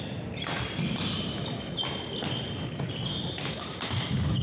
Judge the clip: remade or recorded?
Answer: recorded